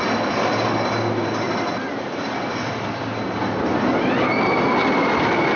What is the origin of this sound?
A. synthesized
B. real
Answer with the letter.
B